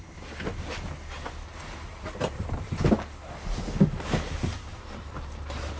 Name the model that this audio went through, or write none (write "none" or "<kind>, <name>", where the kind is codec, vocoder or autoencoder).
none